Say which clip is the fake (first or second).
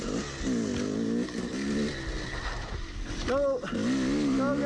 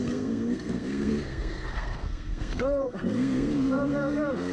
second